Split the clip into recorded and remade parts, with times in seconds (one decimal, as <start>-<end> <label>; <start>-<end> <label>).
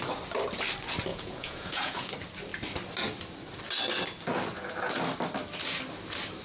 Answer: 0.0-1.1 recorded; 1.1-2.1 remade; 2.1-6.4 recorded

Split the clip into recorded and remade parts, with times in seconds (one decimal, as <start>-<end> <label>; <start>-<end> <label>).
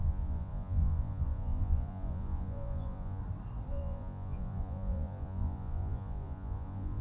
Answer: 0.0-3.2 remade; 3.2-3.7 recorded; 3.7-7.0 remade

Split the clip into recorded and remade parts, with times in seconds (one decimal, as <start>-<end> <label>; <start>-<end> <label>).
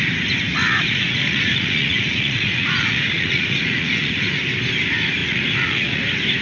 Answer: 0.0-0.6 recorded; 0.6-4.4 remade; 4.4-5.2 recorded; 5.2-6.0 remade; 6.0-6.4 recorded